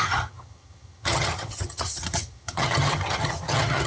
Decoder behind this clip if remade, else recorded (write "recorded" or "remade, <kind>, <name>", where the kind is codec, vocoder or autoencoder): remade, vocoder, HiFi-GAN